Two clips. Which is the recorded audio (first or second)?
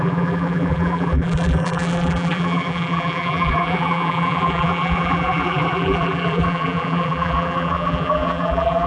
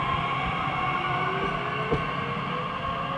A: second